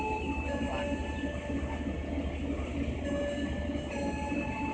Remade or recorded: recorded